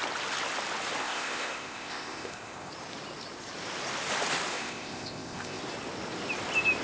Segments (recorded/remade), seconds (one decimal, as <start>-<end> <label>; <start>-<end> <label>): 0.0-1.0 recorded; 1.0-2.7 remade; 2.7-4.5 recorded; 4.5-5.6 remade; 5.6-6.8 recorded